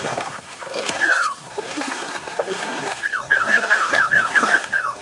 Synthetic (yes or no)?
yes